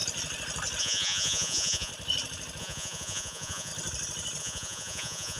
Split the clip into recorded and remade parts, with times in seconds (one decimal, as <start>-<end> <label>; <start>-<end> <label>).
0.0-0.8 recorded; 0.8-1.9 remade; 1.9-2.6 recorded; 2.6-3.7 remade; 3.7-4.4 recorded; 4.4-5.4 remade